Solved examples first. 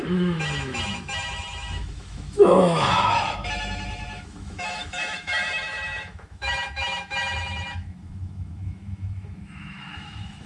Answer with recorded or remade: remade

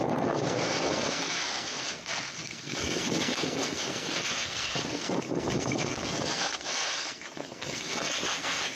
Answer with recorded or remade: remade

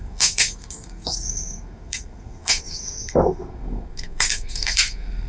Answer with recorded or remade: remade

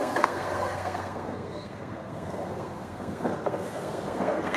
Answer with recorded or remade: remade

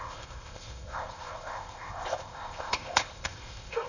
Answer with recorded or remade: remade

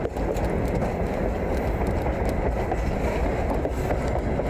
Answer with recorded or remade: recorded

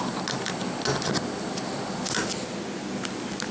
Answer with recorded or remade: recorded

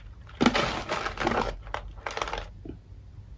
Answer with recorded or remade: recorded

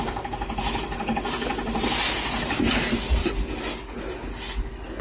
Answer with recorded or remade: recorded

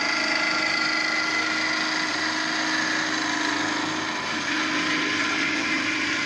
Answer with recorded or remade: recorded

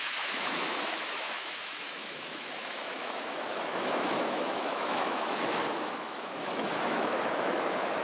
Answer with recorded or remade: remade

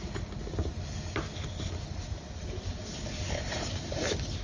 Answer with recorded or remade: recorded